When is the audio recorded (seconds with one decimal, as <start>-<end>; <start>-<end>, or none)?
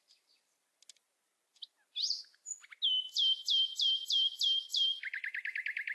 0.0-5.9